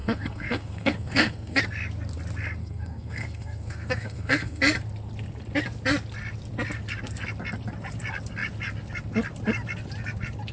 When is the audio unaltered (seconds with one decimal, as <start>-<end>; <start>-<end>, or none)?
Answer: 1.6-2.6; 4.6-10.5